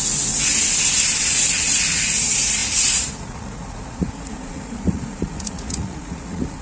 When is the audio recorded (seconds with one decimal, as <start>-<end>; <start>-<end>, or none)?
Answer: 0.5-1.2